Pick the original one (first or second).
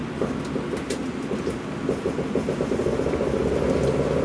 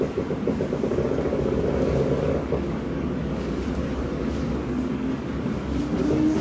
first